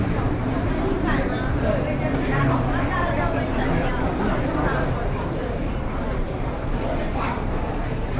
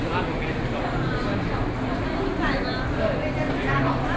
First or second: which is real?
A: second